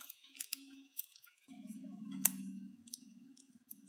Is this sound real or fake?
fake